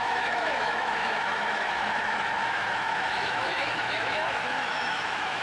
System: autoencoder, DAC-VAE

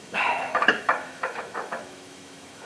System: autoencoder, DAC-VAE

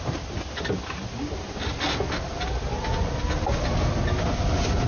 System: none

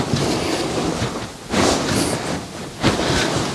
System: none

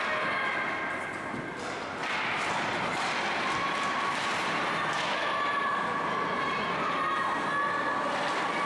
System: none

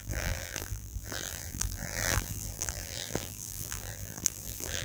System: vocoder, BigVGAN v2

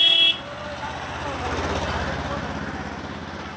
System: none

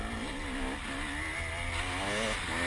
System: none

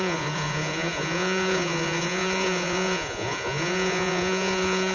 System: vocoder, Vocos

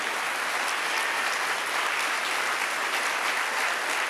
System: none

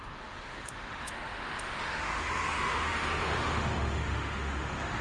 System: autoencoder, DAC-VAE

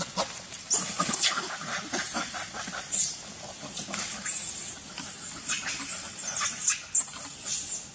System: none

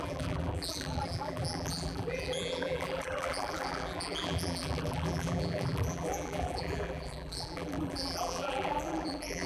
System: vocoder, BigVGAN v2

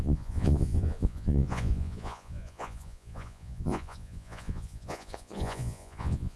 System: vocoder, Vocos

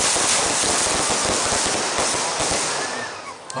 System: none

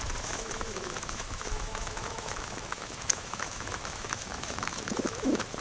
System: autoencoder, DAC-VAE